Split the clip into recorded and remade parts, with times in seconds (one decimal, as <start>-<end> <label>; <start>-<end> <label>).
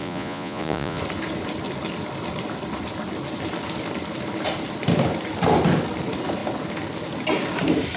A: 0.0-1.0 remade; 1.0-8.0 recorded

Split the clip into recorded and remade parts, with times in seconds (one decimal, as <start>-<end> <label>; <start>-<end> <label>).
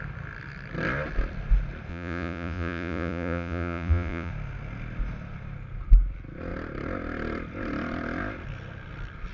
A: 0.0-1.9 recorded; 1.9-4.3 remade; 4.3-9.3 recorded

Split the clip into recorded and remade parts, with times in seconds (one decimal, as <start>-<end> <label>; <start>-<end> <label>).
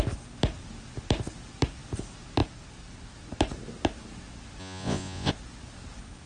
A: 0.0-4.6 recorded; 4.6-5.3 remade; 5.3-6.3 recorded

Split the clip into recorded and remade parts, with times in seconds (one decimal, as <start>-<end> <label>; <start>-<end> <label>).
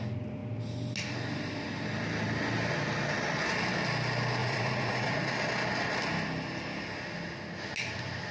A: 0.0-4.4 recorded; 4.4-5.3 remade; 5.3-8.3 recorded